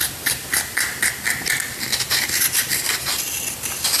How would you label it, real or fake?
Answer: real